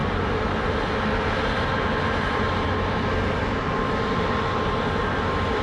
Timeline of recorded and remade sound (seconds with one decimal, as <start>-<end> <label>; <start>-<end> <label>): 0.0-5.6 recorded